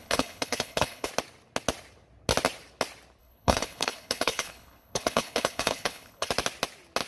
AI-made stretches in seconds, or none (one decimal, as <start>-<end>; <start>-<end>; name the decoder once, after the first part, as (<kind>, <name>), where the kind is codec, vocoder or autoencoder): 0.0-1.1 (codec, HILCodec); 3.2-6.3